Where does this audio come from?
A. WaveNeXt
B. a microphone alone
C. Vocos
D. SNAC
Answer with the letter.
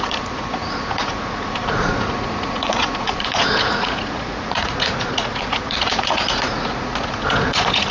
C